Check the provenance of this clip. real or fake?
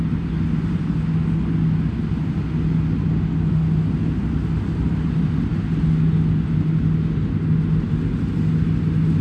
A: real